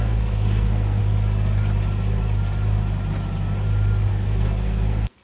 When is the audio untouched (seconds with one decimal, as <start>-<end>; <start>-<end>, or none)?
1.0-4.1